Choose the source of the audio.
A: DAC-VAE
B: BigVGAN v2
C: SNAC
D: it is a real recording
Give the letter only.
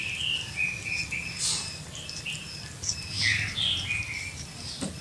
D